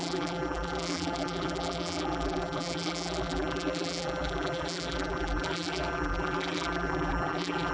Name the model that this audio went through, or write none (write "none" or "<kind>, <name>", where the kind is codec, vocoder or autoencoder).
vocoder, BigVGAN v2